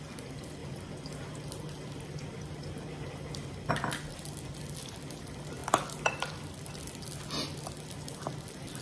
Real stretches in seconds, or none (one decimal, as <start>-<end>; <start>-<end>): 0.0-8.8